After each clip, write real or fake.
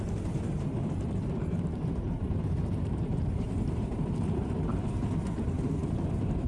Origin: fake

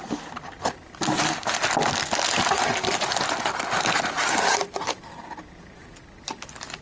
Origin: real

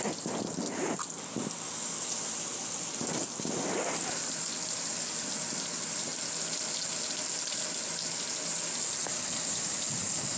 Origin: real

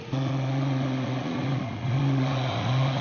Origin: fake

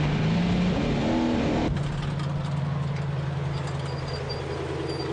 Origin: real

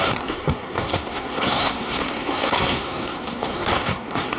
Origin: fake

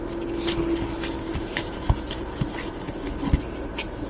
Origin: real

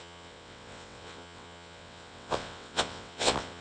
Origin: fake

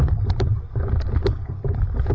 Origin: real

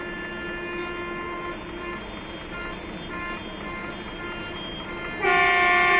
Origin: real